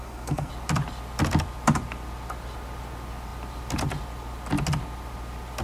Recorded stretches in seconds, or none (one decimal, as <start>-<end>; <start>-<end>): 0.5-5.6